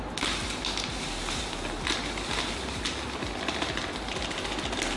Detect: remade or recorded recorded